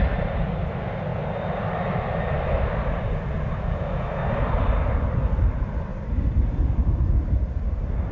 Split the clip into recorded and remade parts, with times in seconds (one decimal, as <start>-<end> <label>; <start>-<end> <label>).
0.0-8.1 recorded